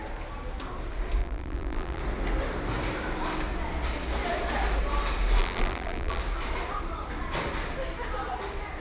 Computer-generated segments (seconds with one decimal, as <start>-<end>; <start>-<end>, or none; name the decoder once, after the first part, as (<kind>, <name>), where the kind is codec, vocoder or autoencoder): 1.2-2.0 (vocoder, BigVGAN v2); 5.4-6.2